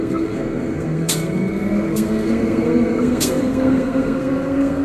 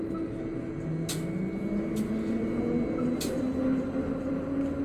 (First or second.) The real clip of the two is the second